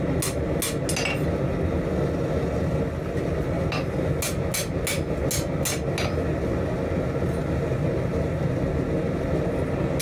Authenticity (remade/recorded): recorded